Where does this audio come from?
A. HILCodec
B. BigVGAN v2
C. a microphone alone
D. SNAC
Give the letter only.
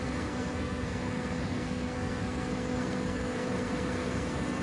D